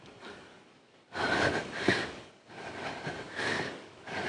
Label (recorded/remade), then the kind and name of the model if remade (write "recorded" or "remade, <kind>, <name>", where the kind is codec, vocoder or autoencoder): remade, codec, DAC